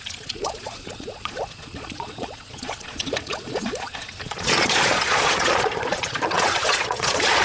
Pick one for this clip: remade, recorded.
remade